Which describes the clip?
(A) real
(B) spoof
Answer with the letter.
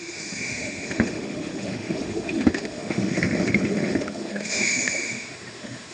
B